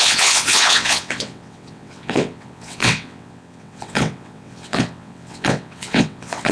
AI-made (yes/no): yes